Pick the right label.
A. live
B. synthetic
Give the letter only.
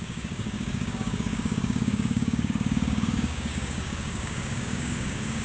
B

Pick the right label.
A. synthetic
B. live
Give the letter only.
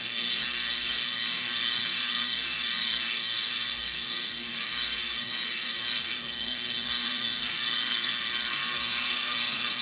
A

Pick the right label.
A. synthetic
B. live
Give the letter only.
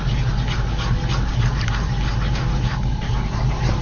B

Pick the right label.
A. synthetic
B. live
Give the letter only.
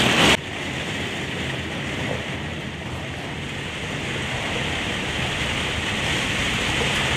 B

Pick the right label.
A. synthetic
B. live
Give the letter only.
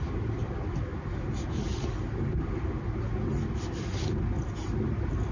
B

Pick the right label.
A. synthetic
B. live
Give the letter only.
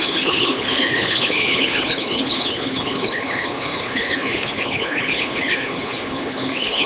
A